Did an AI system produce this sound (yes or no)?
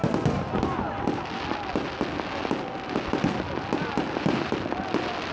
no